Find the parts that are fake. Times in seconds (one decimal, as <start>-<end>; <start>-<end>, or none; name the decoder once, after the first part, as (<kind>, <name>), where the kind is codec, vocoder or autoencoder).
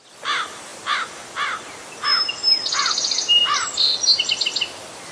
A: none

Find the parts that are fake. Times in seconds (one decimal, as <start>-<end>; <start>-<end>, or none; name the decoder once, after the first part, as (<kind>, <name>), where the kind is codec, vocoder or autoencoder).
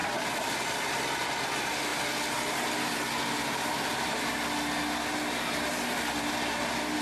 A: none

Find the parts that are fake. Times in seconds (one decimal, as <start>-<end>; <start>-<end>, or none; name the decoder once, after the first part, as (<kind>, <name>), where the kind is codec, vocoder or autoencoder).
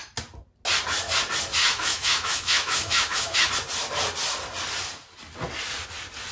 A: 1.6-3.5 (autoencoder, DAC-VAE)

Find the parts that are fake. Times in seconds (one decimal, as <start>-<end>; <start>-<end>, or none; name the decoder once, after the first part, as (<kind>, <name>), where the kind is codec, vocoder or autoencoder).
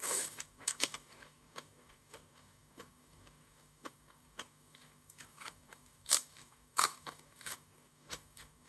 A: 0.0-8.7 (codec, DAC)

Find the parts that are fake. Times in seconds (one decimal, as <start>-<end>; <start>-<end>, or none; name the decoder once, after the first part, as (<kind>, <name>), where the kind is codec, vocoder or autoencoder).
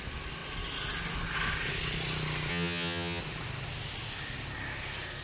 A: 2.5-3.2 (vocoder, HiFi-GAN)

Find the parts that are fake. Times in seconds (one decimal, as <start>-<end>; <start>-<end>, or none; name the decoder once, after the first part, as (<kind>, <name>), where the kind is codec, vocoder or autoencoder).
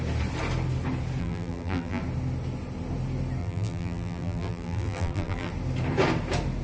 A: 1.2-2.0 (vocoder, BigVGAN v2); 3.4-5.5